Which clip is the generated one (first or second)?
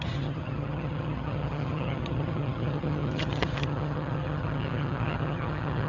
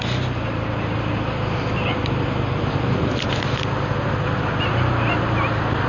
first